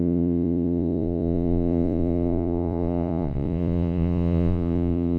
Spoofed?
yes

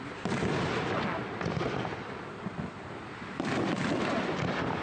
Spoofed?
no